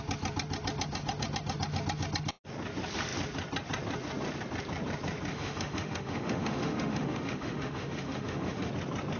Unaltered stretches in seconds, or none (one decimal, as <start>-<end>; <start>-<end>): 0.0-5.3; 8.7-9.2